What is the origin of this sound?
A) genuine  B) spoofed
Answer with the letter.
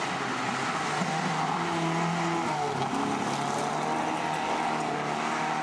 A